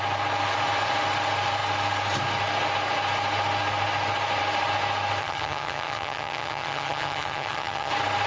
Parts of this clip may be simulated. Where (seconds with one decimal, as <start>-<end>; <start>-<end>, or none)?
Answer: 5.2-7.9